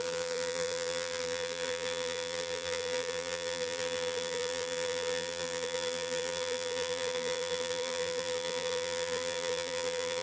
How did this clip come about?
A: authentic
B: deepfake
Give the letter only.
B